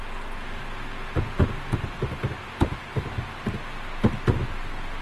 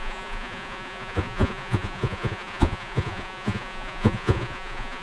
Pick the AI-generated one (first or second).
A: second